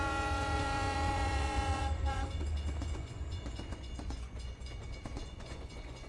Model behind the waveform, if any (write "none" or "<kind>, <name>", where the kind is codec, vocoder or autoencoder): vocoder, Vocos